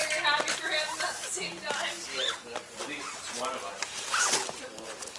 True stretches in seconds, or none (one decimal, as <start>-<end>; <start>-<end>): 0.0-5.2